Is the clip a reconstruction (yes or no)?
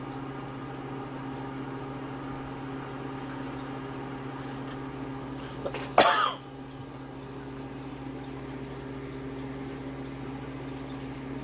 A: no